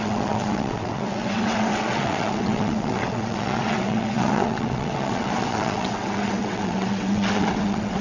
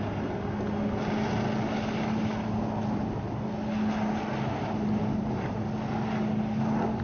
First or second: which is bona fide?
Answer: second